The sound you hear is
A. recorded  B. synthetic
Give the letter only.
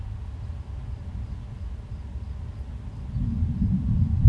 A